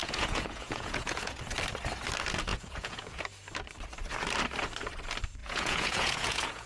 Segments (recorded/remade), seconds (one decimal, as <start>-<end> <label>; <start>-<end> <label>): 0.0-1.4 remade; 1.4-2.5 recorded; 2.5-3.2 remade; 3.2-5.4 recorded; 5.4-6.7 remade

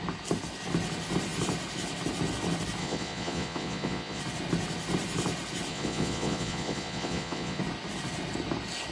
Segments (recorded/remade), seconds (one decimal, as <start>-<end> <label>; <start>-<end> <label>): 0.0-2.8 recorded; 2.8-4.2 remade; 4.2-5.7 recorded; 5.7-7.6 remade; 7.6-8.9 recorded

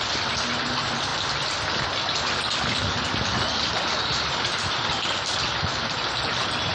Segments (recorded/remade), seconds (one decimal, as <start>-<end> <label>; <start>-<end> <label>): 0.0-6.7 recorded

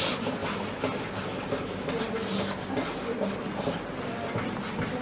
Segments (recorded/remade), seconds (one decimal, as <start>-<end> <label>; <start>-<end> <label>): 0.0-5.0 recorded

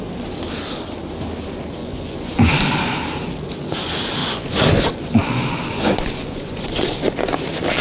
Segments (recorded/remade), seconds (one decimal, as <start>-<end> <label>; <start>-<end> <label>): 0.0-1.8 recorded; 1.8-3.0 remade; 3.0-4.2 recorded; 4.2-7.3 remade; 7.3-7.8 recorded

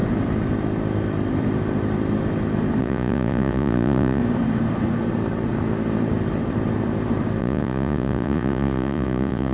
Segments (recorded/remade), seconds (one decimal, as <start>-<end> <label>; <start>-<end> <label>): 0.0-2.8 recorded; 2.8-4.2 remade; 4.2-7.4 recorded; 7.4-9.5 remade